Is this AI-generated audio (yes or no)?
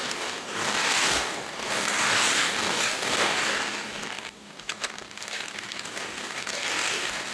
yes